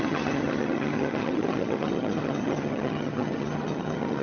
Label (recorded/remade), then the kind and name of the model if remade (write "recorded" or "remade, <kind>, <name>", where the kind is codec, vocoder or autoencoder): remade, vocoder, HiFi-GAN